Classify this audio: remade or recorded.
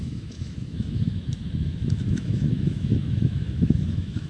remade